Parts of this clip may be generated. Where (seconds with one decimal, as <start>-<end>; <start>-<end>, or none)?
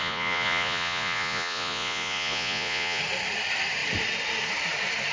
0.0-3.0